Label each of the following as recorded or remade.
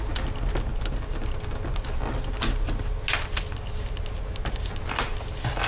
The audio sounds recorded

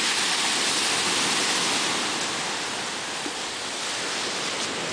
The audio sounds recorded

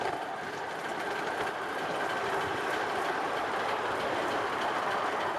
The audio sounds recorded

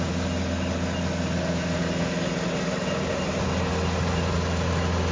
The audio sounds recorded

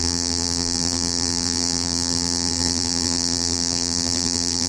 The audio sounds remade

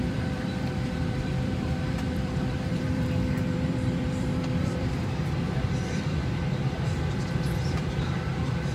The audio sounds remade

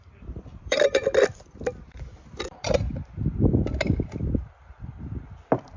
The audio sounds remade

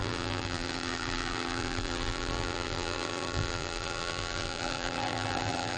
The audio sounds remade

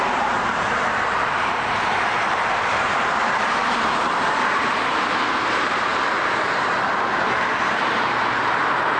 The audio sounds remade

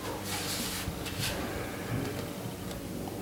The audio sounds recorded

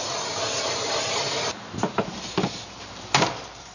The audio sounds remade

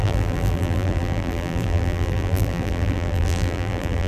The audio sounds remade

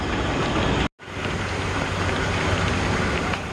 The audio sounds recorded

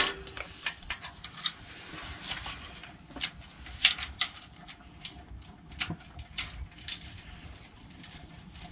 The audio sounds remade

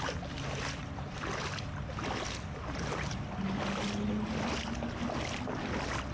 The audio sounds recorded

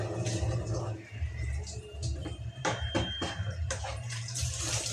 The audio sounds remade